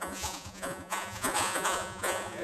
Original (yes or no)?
no